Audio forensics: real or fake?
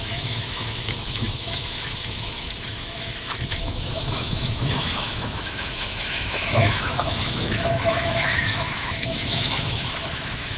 fake